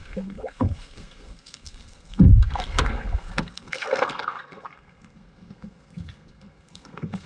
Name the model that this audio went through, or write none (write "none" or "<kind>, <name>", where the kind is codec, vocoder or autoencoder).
codec, SNAC